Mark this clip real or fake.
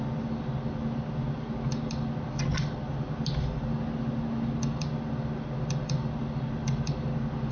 real